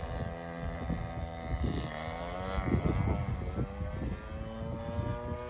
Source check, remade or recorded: recorded